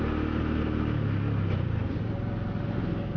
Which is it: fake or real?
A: real